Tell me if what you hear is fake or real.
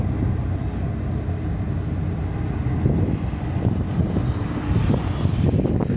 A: real